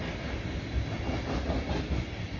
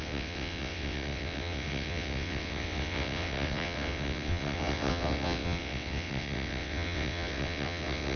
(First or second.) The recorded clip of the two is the first